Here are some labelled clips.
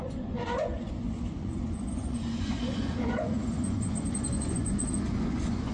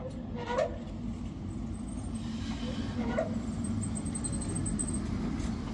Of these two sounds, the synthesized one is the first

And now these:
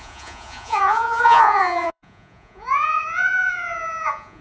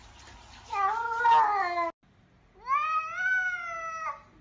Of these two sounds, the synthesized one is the first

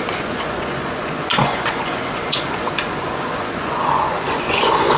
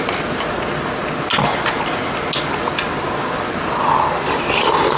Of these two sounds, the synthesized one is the first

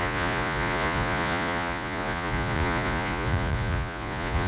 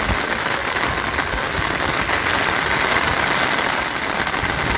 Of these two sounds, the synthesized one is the first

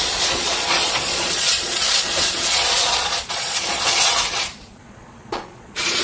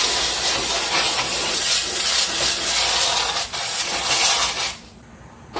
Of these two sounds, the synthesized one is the first